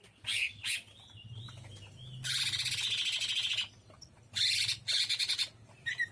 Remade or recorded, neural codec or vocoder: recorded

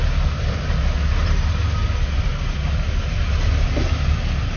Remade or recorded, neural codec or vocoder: recorded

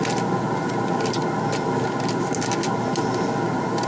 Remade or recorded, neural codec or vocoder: recorded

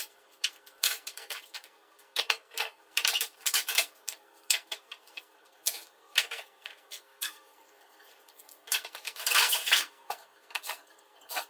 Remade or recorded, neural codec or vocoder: remade, codec, SNAC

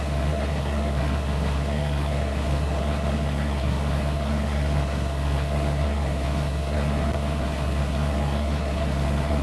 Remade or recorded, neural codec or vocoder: remade, codec, SNAC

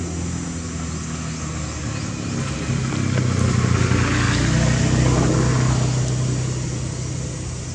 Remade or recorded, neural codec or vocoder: recorded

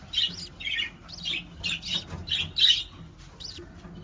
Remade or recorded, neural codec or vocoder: recorded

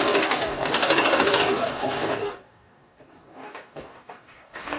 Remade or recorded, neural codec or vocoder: remade, codec, DAC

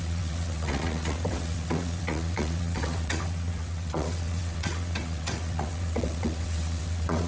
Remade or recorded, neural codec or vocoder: remade, vocoder, WaveNeXt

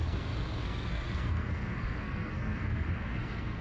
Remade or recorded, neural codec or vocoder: remade, codec, SNAC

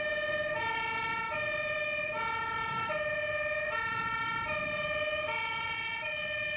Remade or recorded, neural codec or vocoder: remade, vocoder, BigVGAN v2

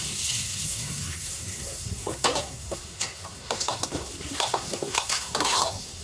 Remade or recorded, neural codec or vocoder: remade, codec, SNAC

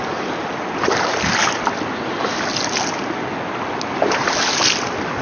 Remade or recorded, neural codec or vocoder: recorded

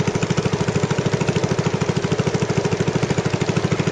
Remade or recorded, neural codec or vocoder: recorded